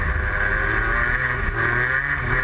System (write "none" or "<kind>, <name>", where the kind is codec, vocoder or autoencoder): none